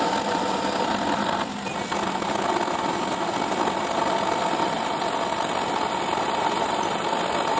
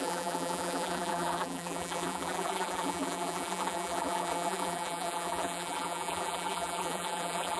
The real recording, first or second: first